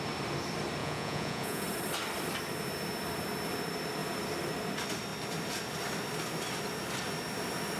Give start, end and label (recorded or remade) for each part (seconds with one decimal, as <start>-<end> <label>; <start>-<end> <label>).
0.0-0.8 recorded; 0.8-1.6 remade; 1.6-7.8 recorded